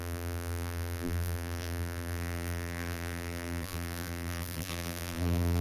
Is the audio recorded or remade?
remade